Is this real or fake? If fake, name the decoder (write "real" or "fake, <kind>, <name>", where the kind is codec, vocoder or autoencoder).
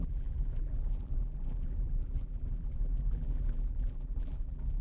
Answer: fake, vocoder, BigVGAN v2